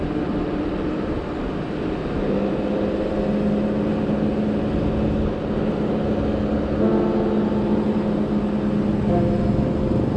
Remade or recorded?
recorded